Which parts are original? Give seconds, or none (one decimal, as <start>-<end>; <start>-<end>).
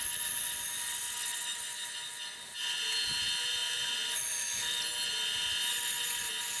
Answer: 0.0-6.6